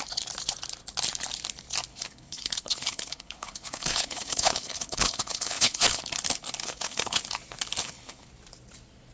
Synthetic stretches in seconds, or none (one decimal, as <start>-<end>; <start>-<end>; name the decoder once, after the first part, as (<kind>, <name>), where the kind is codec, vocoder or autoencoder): 1.9-6.0 (codec, HILCodec); 6.6-7.2; 7.8-8.3